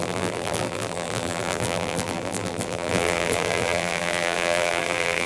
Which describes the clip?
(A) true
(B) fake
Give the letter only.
B